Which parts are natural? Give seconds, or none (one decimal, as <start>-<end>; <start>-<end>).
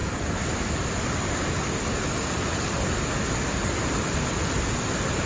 0.0-5.3